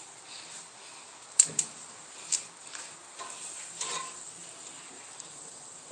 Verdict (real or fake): real